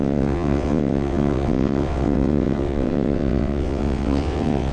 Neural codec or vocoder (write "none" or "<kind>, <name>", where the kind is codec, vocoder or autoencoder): vocoder, WaveNeXt